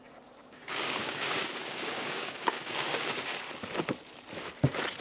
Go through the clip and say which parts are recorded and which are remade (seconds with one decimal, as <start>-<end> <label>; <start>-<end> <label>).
0.0-0.4 recorded; 0.4-3.4 remade; 3.4-5.0 recorded